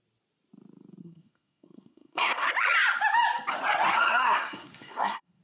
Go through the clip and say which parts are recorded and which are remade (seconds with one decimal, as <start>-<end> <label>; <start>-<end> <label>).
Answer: 0.0-1.0 recorded; 1.0-2.5 remade; 2.5-3.9 recorded; 3.9-5.4 remade

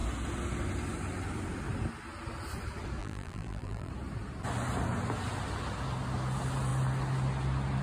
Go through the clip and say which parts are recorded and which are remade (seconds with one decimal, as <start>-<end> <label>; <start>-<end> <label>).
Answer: 0.0-3.0 recorded; 3.0-3.9 remade; 3.9-7.8 recorded

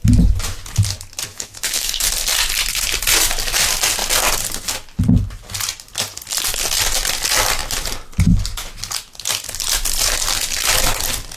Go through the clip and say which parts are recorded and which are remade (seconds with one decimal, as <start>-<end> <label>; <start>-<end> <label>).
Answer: 0.0-1.3 recorded; 1.3-2.1 remade; 2.1-11.4 recorded

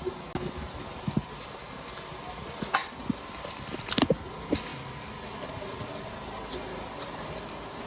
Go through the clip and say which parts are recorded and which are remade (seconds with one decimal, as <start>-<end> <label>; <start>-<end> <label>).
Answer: 0.0-7.9 recorded